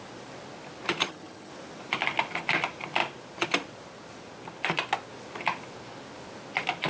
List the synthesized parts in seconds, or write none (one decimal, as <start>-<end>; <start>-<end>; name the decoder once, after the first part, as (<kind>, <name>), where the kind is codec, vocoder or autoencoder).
1.0-1.5 (vocoder, HiFi-GAN)